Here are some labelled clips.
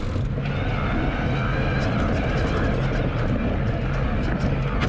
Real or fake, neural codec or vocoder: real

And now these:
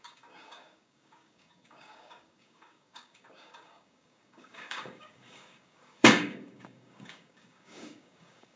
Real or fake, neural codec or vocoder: fake, codec, DAC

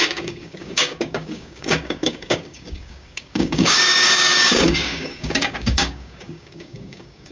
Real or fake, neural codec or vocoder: fake, codec, DAC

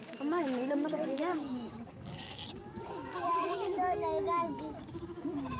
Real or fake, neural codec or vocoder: fake, codec, DAC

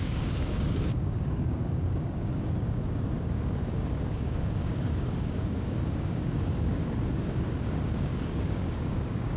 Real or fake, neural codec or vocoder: fake, codec, DAC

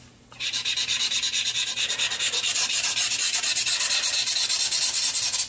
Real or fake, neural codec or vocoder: real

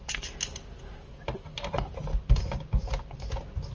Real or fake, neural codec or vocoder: real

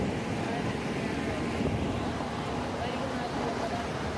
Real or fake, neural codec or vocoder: real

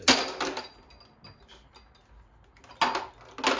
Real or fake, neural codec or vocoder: real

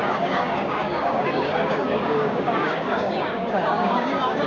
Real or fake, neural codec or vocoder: fake, codec, DAC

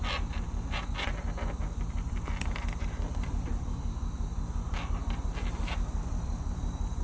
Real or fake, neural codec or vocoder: real